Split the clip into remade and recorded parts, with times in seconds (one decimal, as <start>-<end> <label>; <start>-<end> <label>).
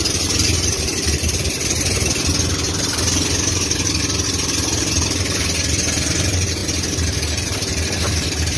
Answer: 0.0-1.4 remade; 1.4-5.2 recorded; 5.2-8.6 remade